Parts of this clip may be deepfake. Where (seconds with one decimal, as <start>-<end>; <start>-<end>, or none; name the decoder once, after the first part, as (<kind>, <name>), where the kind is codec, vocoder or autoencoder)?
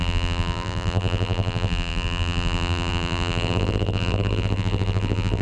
0.0-5.4 (vocoder, BigVGAN v2)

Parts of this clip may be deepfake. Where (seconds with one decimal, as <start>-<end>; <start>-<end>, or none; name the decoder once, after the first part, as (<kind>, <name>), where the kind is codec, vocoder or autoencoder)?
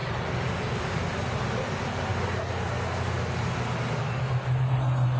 none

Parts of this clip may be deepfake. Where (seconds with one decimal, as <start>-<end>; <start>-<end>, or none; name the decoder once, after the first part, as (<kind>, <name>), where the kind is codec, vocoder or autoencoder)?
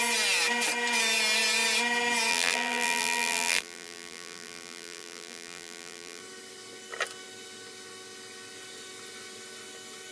2.3-6.2 (vocoder, BigVGAN v2)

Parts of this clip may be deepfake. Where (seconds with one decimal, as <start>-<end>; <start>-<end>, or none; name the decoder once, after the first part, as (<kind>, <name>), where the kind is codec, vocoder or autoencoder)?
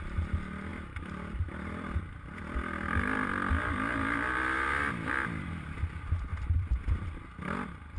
0.7-3.5 (vocoder, BigVGAN v2); 6.3-7.2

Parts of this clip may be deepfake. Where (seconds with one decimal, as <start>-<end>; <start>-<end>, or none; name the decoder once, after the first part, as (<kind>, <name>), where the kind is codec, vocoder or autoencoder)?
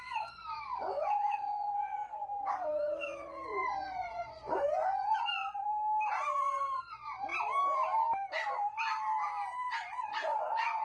0.0-5.4 (vocoder, Vocos); 6.8-7.3; 10.0-10.8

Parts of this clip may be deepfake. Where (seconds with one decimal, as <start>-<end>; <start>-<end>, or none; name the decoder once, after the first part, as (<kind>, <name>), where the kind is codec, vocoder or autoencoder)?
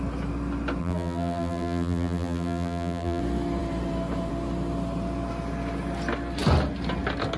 0.8-3.2 (vocoder, BigVGAN v2)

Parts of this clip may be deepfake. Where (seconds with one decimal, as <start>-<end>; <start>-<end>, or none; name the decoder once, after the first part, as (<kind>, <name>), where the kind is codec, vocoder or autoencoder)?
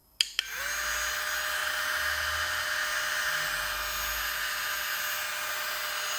none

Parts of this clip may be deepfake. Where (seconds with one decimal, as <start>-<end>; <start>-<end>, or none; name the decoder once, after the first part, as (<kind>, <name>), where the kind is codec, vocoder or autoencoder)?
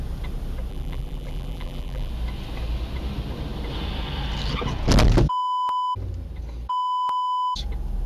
0.7-2.1 (vocoder, BigVGAN v2)